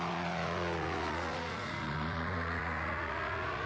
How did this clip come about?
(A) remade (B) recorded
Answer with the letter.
A